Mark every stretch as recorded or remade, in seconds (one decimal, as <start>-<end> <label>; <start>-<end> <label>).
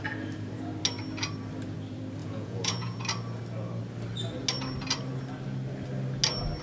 0.0-2.2 recorded; 2.2-3.0 remade; 3.0-6.6 recorded